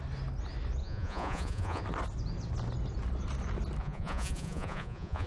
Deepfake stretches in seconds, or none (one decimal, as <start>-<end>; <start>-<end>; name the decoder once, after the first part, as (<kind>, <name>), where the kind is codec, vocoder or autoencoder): 0.8-1.8 (vocoder, Vocos); 3.8-5.3

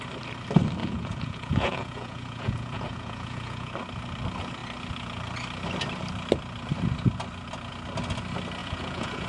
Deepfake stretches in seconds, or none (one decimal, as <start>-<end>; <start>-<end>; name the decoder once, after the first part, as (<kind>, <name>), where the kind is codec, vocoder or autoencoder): 0.8-3.7 (vocoder, Vocos); 8.6-9.3

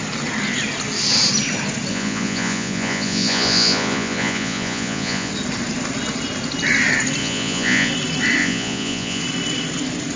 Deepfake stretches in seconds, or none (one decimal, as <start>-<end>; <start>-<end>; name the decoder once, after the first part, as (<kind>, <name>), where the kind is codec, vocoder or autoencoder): 1.9-5.3 (vocoder, Vocos); 7.2-7.9; 8.4-9.2

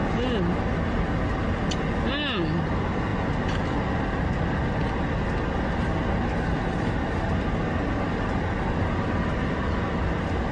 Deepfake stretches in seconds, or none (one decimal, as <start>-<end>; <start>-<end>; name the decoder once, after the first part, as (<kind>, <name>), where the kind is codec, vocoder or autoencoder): none

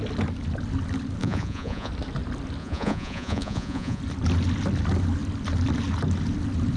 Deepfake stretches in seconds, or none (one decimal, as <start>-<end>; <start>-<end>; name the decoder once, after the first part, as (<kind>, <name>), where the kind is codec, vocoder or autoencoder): 1.2-1.9 (vocoder, Vocos); 2.6-4.0